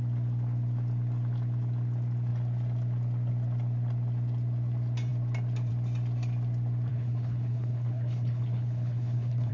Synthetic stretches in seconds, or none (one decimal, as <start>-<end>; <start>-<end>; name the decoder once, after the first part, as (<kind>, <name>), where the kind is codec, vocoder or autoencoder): 6.9-9.5 (codec, HILCodec)